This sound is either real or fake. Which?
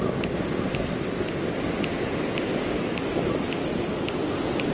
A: real